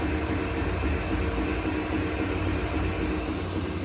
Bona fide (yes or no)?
yes